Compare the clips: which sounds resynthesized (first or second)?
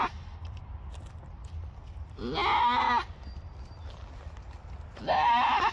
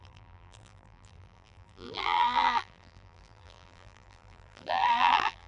second